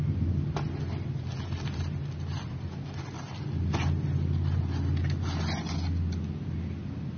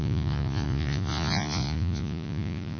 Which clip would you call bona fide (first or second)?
first